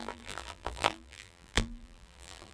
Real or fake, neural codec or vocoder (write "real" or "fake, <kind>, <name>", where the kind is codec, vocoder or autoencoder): fake, vocoder, BigVGAN v2